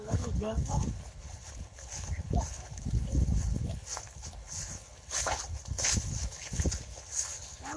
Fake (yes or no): yes